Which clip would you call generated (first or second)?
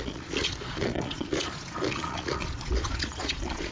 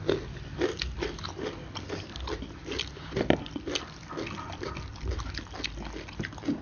first